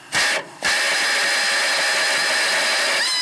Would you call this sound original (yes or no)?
yes